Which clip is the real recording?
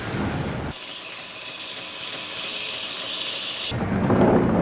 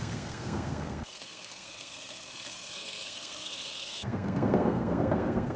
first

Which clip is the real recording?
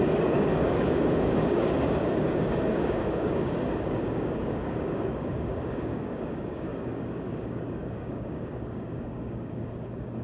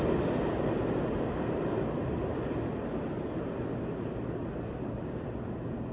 second